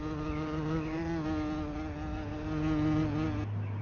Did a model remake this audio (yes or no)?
no